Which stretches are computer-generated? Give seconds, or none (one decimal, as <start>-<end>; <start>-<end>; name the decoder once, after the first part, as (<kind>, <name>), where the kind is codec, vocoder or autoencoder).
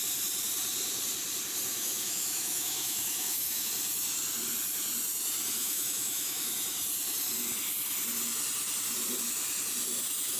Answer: 1.7-3.7 (autoencoder, DAC-VAE); 5.6-6.5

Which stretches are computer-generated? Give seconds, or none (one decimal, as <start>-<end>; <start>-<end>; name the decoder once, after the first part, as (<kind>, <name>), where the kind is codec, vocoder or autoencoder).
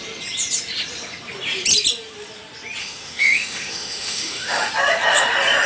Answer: 2.8-4.7 (autoencoder, DAC-VAE)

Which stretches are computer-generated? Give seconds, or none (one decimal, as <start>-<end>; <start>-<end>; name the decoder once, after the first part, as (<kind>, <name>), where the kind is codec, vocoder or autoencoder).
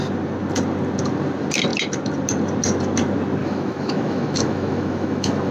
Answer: 3.4-5.5 (autoencoder, DAC-VAE)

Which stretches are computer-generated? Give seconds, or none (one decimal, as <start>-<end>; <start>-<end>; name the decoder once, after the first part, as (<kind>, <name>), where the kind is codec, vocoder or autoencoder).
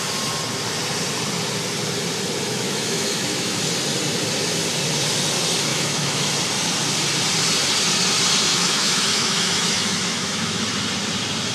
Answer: 2.5-3.6 (autoencoder, DAC-VAE); 5.7-6.3; 8.5-10.6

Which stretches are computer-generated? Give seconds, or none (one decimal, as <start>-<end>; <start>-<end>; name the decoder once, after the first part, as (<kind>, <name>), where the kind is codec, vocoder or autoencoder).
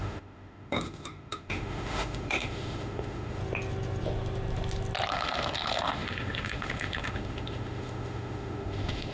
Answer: 0.0-3.4 (autoencoder, DAC-VAE); 5.1-9.1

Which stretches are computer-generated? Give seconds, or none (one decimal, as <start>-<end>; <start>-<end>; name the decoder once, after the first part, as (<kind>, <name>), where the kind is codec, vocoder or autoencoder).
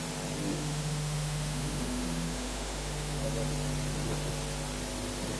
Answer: 0.5-3.2 (autoencoder, DAC-VAE)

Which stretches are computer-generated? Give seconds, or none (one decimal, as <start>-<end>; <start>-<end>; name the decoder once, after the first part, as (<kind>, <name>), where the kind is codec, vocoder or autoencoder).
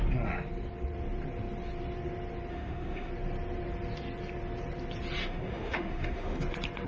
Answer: 2.5-3.1 (autoencoder, DAC-VAE); 5.2-6.4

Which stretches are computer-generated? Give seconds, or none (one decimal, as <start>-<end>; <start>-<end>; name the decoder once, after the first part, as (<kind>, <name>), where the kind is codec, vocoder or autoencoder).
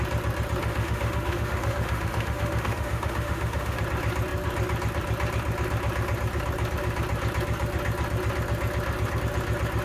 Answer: 0.6-3.8 (autoencoder, DAC-VAE)